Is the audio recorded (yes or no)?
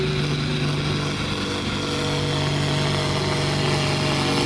yes